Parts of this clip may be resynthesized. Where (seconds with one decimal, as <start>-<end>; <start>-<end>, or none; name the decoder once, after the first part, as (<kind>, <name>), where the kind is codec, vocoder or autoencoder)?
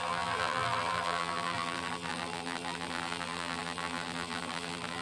0.0-5.0 (vocoder, BigVGAN v2)